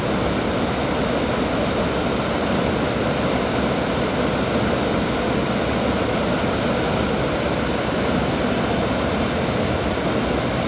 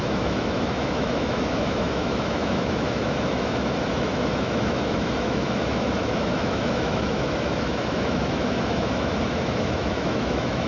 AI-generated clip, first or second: second